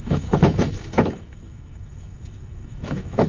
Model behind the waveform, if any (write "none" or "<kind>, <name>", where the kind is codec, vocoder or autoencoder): autoencoder, DAC-VAE